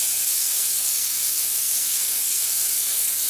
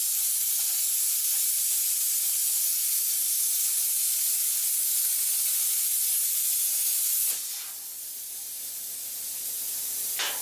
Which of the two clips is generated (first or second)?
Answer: first